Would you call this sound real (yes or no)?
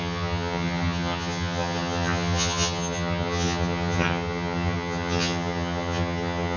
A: no